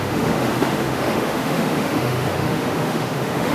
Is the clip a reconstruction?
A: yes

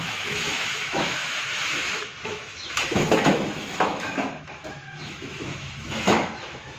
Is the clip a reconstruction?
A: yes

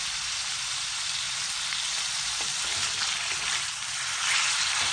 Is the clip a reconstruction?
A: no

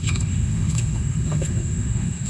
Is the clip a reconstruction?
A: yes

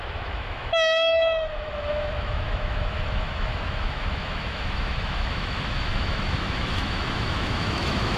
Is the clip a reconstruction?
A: yes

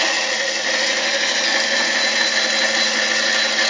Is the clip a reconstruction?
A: no